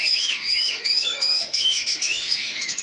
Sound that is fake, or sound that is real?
fake